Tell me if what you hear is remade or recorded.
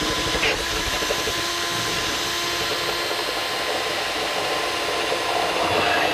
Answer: recorded